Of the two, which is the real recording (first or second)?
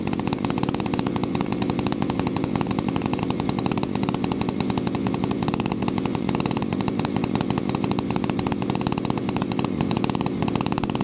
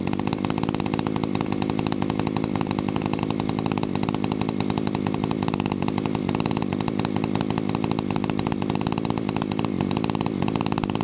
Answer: second